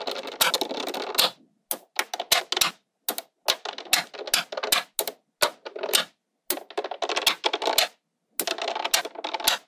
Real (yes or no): yes